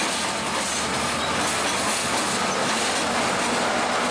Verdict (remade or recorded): recorded